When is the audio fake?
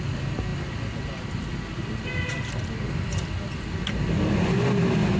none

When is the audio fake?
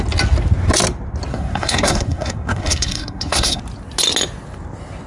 1.3-3.6 (codec, SNAC)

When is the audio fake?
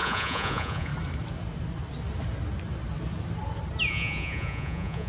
0.0-0.9 (vocoder, Vocos); 3.9-5.1